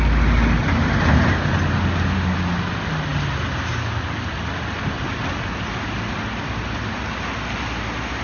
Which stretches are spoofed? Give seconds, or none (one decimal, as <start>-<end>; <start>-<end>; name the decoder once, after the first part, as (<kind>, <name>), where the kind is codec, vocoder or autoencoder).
none